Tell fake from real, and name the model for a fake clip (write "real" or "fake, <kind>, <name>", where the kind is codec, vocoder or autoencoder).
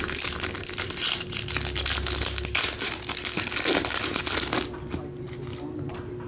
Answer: real